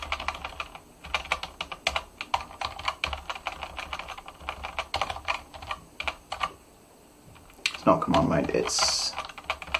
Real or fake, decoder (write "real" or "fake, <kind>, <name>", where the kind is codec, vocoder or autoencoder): real